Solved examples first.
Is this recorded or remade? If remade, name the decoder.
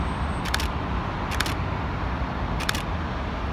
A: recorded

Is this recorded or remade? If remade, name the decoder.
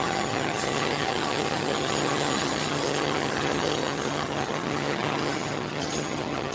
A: remade, vocoder, HiFi-GAN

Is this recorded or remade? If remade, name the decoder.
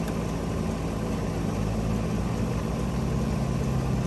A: recorded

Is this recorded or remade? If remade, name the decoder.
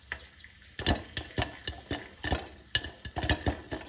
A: recorded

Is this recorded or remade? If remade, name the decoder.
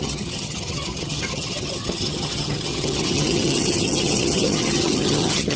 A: remade, vocoder, HiFi-GAN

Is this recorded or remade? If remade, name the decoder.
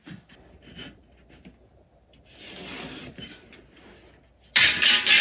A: recorded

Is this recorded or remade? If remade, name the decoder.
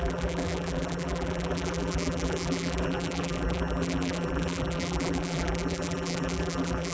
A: remade, vocoder, BigVGAN v2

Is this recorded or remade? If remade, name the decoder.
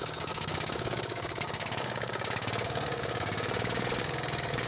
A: remade, codec, DAC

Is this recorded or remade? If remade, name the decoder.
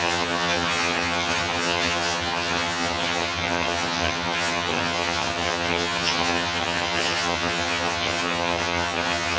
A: remade, vocoder, HiFi-GAN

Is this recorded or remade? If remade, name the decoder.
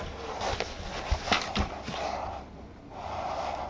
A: recorded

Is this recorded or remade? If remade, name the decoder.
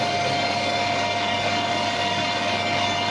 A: remade, codec, DAC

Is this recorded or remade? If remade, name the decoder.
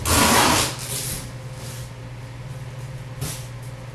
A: recorded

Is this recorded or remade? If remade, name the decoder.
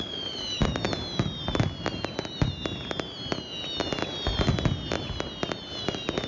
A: recorded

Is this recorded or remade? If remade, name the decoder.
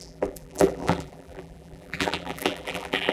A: remade, vocoder, BigVGAN v2